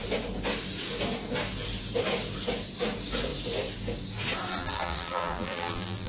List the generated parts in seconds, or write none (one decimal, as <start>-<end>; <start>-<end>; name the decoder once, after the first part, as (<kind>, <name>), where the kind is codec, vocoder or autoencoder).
4.5-6.1 (vocoder, BigVGAN v2)